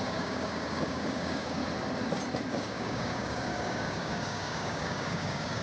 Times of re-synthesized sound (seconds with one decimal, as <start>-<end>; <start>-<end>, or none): 0.0-1.6; 2.5-5.6